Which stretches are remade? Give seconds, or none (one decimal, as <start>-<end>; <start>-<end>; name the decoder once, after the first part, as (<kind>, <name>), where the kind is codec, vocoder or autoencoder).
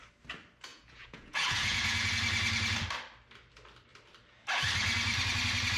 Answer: 0.7-2.1 (vocoder, Vocos)